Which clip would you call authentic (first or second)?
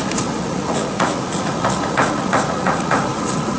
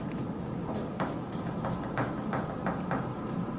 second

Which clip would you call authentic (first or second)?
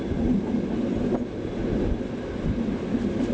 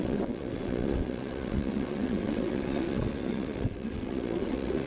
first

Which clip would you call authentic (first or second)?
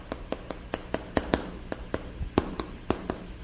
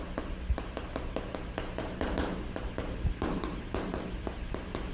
first